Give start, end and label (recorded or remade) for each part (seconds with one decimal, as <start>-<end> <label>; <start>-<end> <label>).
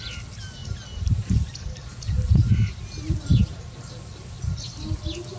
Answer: 0.0-5.4 recorded